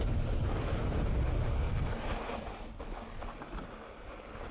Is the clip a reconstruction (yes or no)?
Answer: no